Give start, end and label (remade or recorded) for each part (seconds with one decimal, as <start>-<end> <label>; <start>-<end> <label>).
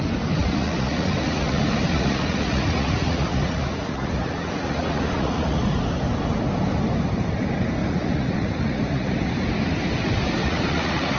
0.0-0.4 recorded; 0.4-5.6 remade; 5.6-7.8 recorded; 7.8-9.3 remade; 9.3-10.4 recorded; 10.4-11.2 remade